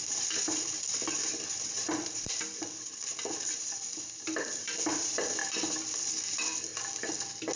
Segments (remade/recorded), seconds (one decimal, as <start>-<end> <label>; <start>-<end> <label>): 0.0-6.7 remade; 6.7-7.6 recorded